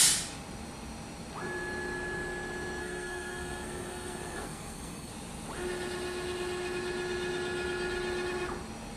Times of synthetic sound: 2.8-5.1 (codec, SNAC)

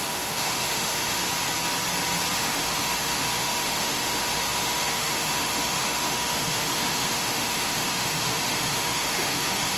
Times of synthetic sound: 0.0-1.2 (autoencoder, DAC-VAE); 2.3-9.8

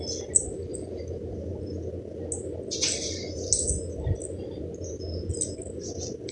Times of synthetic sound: none

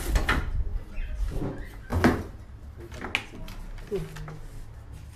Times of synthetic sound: none